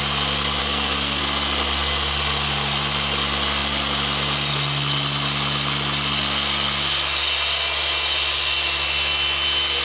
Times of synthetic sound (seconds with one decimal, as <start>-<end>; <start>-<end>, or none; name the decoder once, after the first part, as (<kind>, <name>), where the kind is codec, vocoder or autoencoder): 0.6-1.2 (codec, SNAC)